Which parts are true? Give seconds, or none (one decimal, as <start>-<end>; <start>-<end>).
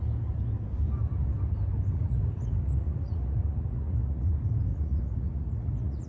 0.0-1.9; 4.3-4.7